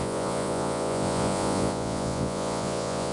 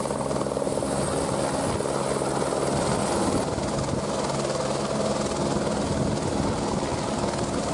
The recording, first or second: second